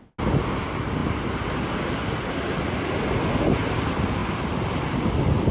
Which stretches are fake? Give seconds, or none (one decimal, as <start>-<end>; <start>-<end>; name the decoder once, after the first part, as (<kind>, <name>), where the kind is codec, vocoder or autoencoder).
none